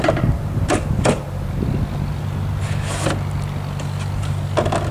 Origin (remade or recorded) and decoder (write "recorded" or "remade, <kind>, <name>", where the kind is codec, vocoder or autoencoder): recorded